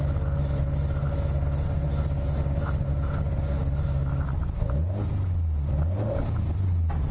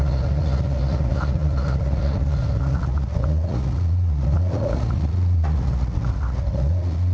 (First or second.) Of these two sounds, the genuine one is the first